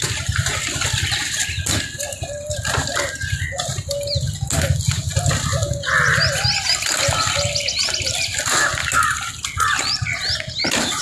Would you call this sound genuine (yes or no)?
yes